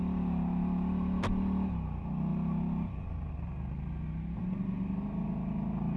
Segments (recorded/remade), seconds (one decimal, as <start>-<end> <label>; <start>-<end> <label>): 0.0-6.0 recorded